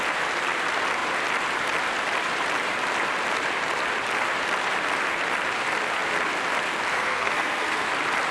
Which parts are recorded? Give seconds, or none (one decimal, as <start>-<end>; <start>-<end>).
0.0-6.9; 7.9-8.3